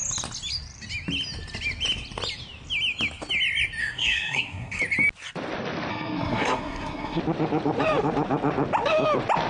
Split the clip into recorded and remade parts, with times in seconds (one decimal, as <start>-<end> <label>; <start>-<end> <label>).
0.0-3.8 recorded; 3.8-4.8 remade; 4.8-5.9 recorded; 5.9-7.2 remade; 7.2-9.5 recorded